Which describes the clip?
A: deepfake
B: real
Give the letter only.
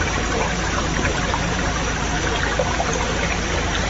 B